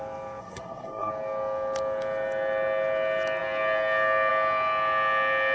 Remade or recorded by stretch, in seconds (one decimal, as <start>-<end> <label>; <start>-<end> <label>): 0.0-0.4 recorded; 0.4-1.1 remade; 1.1-5.5 recorded